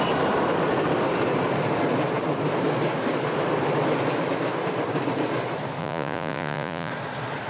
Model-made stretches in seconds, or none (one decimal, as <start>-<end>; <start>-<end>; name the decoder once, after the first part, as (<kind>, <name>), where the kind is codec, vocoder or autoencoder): 5.8-6.9 (vocoder, Vocos)